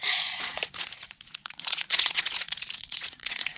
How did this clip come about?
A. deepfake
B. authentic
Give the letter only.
A